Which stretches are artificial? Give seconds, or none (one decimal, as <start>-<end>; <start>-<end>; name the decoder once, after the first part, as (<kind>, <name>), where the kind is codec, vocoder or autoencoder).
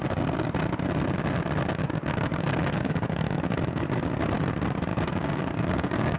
1.8-3.8 (codec, DAC); 4.9-6.2